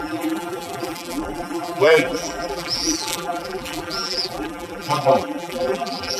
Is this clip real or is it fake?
fake